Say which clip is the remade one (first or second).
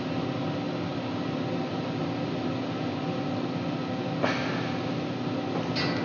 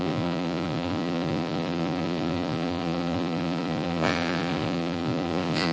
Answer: second